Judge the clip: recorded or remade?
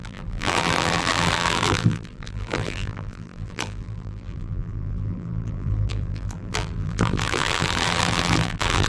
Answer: remade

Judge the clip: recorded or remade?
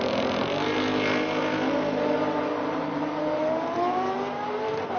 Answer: remade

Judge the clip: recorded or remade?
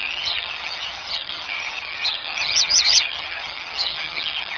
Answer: remade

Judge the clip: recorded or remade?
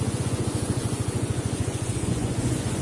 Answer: remade